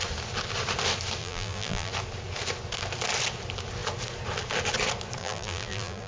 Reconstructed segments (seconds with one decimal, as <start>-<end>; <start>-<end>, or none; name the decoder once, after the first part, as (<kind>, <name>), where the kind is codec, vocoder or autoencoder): 1.2-1.9 (vocoder, BigVGAN v2); 5.2-6.1